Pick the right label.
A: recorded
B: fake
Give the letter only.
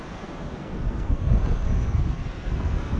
B